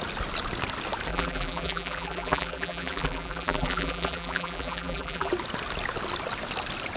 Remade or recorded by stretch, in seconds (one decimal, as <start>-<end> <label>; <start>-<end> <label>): 0.0-1.1 recorded; 1.1-5.3 remade; 5.3-7.0 recorded